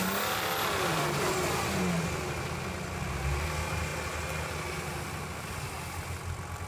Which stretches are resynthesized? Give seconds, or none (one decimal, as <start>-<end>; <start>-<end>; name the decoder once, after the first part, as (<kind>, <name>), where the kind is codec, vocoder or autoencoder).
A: 0.0-1.8 (vocoder, BigVGAN v2)